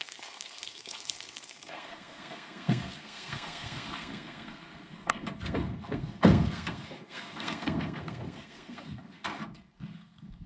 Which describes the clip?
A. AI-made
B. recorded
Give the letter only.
A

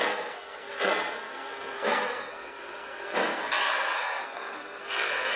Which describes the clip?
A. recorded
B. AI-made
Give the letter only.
B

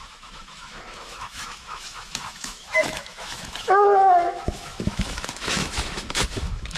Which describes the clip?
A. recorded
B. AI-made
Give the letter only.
B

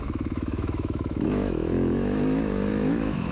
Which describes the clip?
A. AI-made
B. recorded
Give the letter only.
A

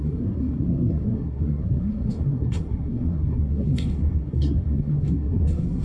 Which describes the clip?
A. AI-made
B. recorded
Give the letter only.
A